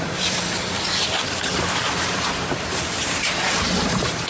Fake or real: real